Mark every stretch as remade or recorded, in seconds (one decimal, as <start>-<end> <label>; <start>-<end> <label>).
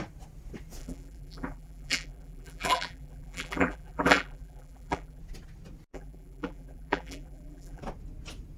0.0-0.8 recorded; 0.8-5.2 remade; 5.2-5.9 recorded; 5.9-7.8 remade; 7.8-8.6 recorded